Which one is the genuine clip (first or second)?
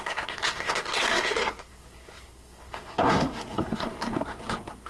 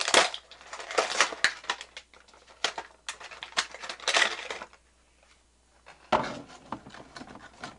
second